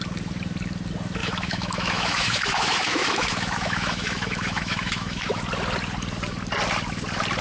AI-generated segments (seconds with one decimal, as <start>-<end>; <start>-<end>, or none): 1.2-5.4